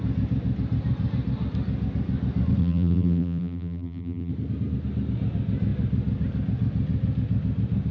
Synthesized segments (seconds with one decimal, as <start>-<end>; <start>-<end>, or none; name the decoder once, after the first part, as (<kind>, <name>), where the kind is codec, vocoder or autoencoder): 2.6-4.3 (vocoder, BigVGAN v2)